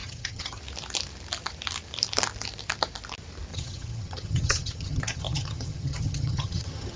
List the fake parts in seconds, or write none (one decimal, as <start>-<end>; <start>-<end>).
0.0-0.6; 3.5-7.0